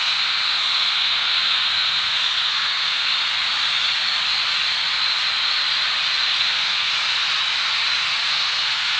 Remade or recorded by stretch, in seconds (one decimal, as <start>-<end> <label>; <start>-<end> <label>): 0.0-3.1 remade; 3.1-6.4 recorded; 6.4-6.9 remade; 6.9-8.3 recorded; 8.3-9.0 remade